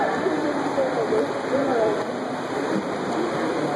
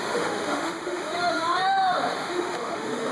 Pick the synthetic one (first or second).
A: second